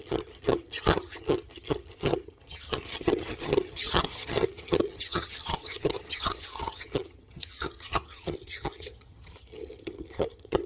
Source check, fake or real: fake